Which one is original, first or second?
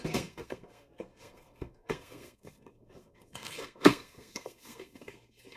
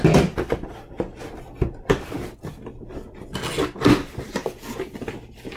second